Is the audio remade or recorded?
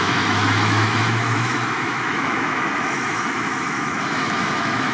remade